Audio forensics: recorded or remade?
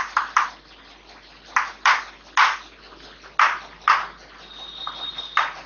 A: recorded